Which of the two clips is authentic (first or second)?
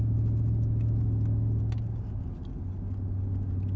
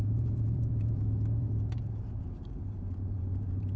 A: first